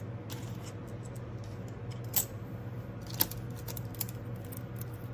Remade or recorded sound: recorded